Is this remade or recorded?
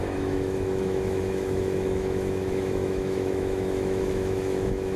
remade